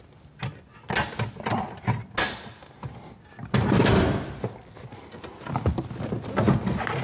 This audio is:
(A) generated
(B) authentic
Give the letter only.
B